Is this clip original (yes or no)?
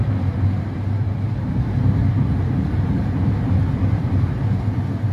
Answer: no